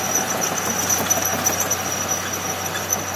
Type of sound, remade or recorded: recorded